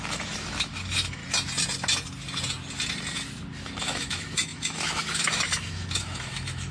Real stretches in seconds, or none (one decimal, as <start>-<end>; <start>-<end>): 1.2-3.8